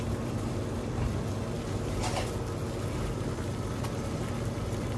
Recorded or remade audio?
recorded